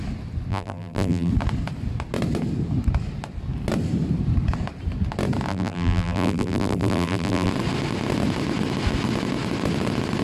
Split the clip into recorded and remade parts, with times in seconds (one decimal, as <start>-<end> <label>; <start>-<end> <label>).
0.0-0.5 recorded; 0.5-1.3 remade; 1.3-5.5 recorded; 5.5-7.5 remade; 7.5-10.2 recorded